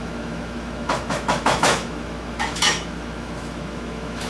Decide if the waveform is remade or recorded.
remade